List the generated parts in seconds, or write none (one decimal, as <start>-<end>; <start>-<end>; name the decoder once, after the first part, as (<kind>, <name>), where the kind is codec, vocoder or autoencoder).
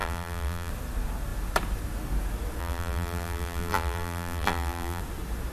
0.0-0.7 (vocoder, BigVGAN v2); 2.6-5.0